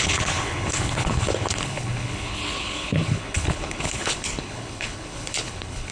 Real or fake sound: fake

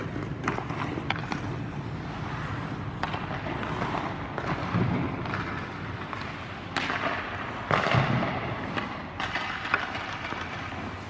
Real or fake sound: real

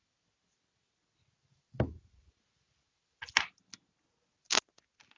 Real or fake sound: real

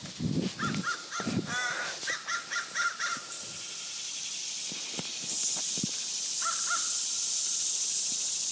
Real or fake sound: real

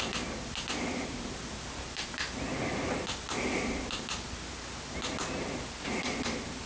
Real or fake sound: real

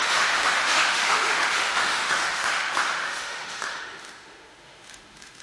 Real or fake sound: fake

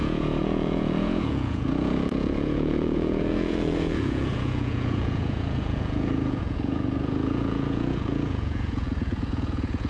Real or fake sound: fake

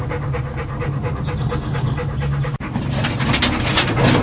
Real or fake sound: real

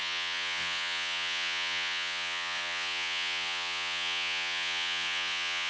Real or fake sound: fake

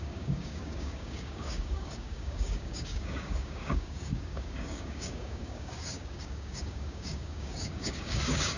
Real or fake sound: fake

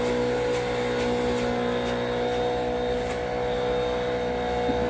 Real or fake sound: real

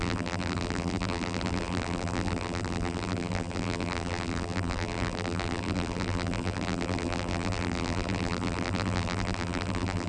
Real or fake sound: fake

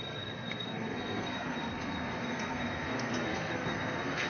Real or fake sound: fake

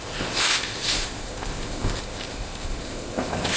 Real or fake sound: fake